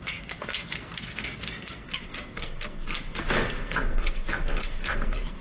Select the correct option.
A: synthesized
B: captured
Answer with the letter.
A